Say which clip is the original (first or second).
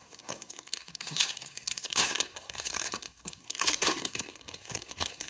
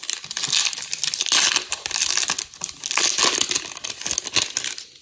second